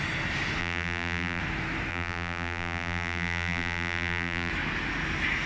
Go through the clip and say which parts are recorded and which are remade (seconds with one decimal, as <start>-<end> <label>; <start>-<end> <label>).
0.0-0.6 recorded; 0.6-1.4 remade; 1.4-1.9 recorded; 1.9-4.5 remade; 4.5-5.5 recorded